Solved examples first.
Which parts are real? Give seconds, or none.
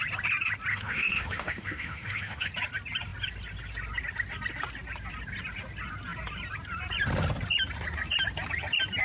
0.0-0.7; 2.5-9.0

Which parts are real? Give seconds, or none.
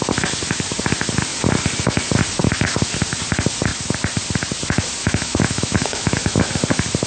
0.0-5.0; 6.4-7.1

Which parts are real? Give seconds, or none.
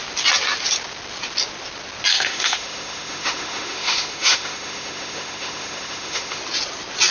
0.0-2.1; 6.4-7.1